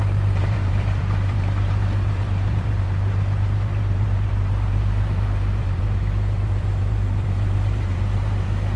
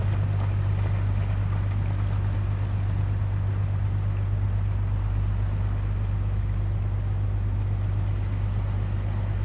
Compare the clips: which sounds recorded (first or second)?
second